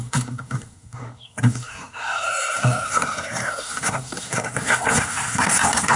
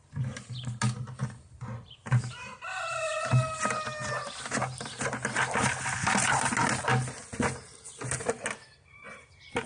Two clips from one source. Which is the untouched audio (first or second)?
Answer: second